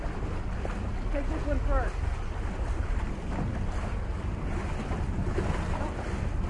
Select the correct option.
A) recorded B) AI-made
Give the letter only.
A